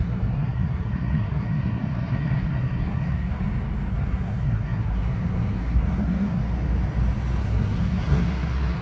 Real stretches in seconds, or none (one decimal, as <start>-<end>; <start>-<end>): 3.4-3.9; 6.4-7.4